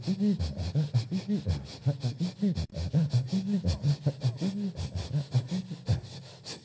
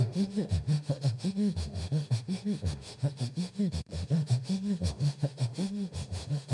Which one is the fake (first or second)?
second